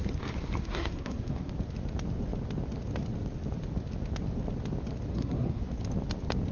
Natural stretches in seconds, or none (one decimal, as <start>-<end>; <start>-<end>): 0.0-0.6; 1.5-5.1; 5.6-6.5